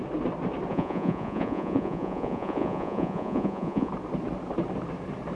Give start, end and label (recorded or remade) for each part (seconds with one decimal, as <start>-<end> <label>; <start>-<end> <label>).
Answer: 0.0-0.7 recorded; 0.7-3.9 remade; 3.9-5.4 recorded